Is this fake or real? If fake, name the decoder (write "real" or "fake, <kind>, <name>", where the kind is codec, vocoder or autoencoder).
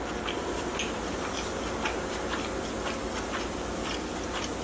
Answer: real